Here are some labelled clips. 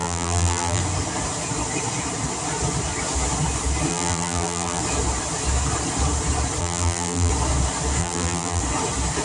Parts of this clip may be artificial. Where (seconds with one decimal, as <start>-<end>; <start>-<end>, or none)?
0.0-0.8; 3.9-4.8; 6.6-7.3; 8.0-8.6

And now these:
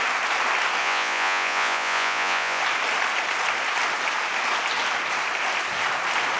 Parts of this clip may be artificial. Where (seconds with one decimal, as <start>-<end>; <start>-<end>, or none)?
0.8-2.6

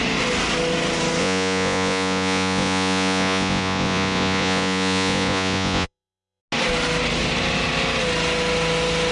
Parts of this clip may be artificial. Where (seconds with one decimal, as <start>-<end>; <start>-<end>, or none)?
1.2-6.4

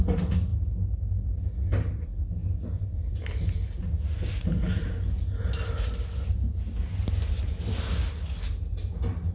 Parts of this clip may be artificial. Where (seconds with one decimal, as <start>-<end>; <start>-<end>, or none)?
none